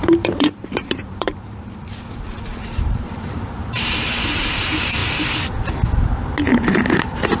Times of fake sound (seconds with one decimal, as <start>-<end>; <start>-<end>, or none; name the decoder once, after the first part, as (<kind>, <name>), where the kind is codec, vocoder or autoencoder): 0.0-5.0 (vocoder, BigVGAN v2); 6.7-7.4